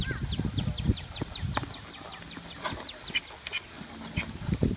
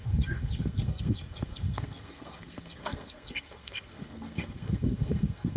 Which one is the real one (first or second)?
first